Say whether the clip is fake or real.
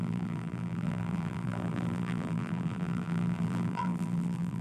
fake